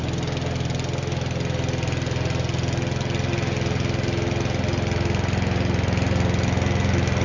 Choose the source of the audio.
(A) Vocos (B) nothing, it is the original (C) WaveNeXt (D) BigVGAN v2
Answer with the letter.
B